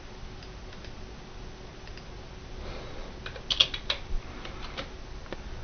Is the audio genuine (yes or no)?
yes